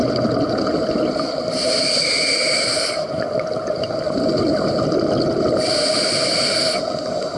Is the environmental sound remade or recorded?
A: recorded